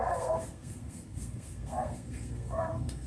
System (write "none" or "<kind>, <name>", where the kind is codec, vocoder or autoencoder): codec, SNAC